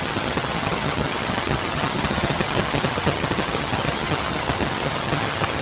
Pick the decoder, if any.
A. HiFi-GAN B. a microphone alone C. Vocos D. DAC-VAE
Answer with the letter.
A